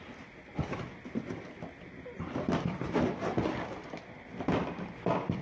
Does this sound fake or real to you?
real